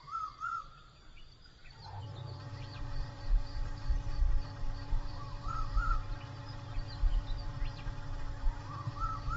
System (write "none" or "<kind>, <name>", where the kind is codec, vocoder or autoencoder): vocoder, BigVGAN v2